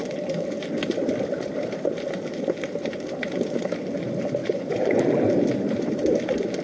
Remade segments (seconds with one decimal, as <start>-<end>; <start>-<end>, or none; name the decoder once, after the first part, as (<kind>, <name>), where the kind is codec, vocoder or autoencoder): 4.4-5.1 (vocoder, Vocos)